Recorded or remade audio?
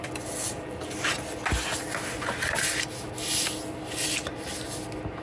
recorded